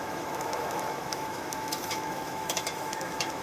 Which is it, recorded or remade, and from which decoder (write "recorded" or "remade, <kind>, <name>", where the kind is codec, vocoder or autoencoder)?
remade, autoencoder, DAC-VAE